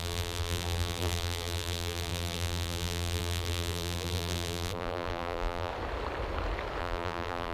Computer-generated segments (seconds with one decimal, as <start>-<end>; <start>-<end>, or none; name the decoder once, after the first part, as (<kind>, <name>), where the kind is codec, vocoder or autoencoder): 0.0-5.7 (vocoder, BigVGAN v2); 6.8-7.5